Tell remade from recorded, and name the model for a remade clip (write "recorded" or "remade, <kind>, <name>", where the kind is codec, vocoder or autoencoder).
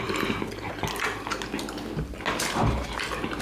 recorded